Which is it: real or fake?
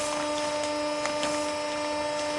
real